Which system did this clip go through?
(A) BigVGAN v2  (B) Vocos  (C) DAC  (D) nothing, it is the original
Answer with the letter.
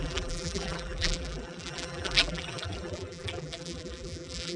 A